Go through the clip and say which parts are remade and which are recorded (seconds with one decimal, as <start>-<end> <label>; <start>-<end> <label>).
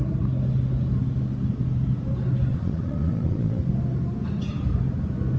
0.0-2.5 recorded; 2.5-3.6 remade; 3.6-5.4 recorded